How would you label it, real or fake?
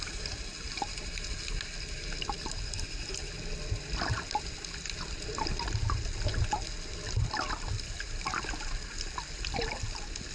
real